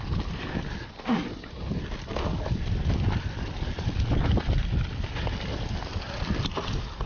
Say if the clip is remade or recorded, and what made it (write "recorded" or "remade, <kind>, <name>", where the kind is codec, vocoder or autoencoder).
recorded